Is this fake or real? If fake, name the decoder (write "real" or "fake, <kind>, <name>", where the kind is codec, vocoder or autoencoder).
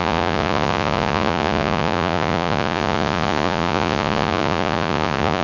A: fake, vocoder, Vocos